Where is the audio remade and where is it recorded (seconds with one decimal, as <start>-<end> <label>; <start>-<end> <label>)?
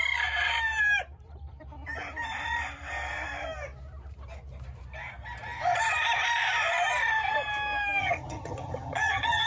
0.0-8.0 recorded; 8.0-9.5 remade